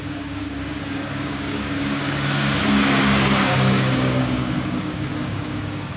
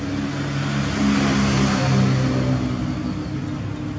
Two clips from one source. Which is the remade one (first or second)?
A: first